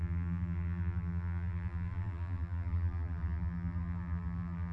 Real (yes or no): no